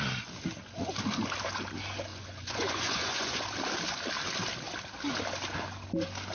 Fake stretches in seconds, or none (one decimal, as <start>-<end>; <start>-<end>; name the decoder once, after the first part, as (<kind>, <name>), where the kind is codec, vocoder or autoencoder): 2.1-3.4 (vocoder, Vocos)